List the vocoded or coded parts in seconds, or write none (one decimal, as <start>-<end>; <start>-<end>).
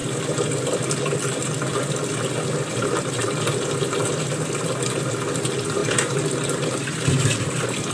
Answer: none